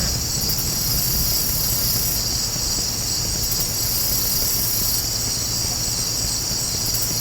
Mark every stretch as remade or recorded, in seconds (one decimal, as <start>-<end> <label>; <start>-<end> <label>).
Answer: 0.0-7.2 recorded